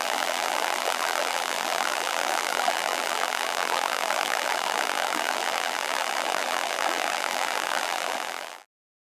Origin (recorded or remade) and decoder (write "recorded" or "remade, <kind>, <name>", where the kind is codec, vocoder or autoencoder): remade, vocoder, BigVGAN v2